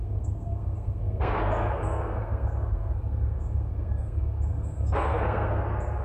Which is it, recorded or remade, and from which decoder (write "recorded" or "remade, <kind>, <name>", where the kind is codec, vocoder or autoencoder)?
remade, codec, SNAC